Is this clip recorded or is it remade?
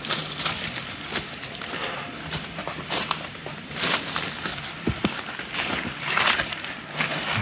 recorded